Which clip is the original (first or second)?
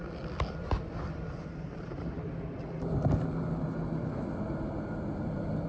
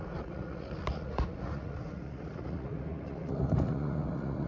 first